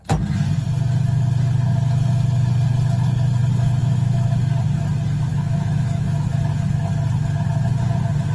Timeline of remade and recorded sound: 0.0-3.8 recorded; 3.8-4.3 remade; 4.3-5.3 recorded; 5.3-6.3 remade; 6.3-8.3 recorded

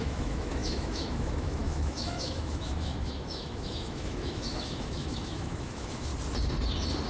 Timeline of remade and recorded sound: 0.0-6.1 remade; 6.1-7.1 recorded